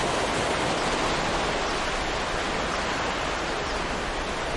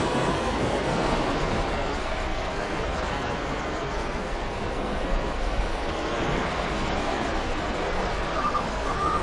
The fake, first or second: second